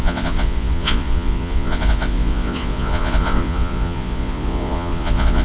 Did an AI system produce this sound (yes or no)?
yes